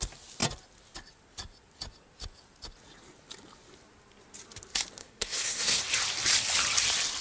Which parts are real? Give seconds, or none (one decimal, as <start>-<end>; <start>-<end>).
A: 0.0-5.0; 5.8-7.2